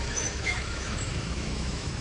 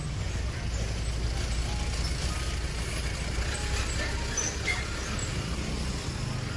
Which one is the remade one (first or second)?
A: first